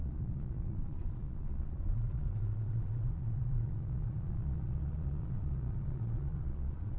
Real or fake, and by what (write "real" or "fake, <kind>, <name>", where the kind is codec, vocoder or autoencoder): fake, vocoder, Vocos